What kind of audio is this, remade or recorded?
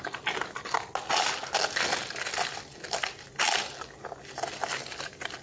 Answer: recorded